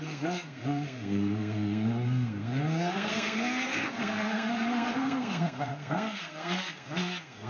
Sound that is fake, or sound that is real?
fake